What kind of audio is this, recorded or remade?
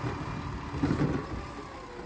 recorded